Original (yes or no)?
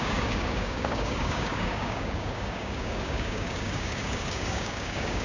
no